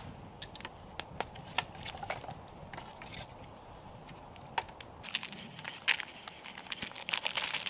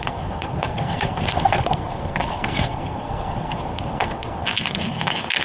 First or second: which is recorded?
first